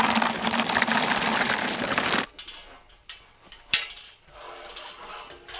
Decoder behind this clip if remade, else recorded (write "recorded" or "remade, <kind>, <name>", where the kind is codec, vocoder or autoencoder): remade, vocoder, BigVGAN v2